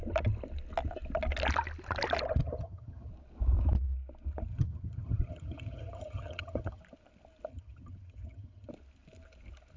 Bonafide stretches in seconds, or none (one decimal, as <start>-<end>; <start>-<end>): 0.0-2.4; 3.1-4.5; 6.8-7.5; 8.7-9.8